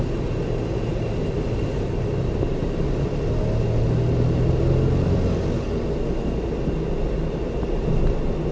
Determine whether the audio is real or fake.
real